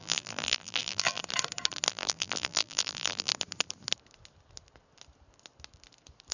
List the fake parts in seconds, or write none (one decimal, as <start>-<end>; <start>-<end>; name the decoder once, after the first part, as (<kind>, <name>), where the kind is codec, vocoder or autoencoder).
0.0-1.2 (vocoder, BigVGAN v2); 1.9-3.3